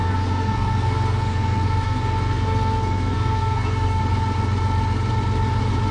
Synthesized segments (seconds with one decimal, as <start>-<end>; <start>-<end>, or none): 0.0-4.0